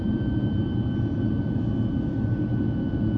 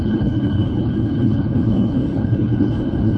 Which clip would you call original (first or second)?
first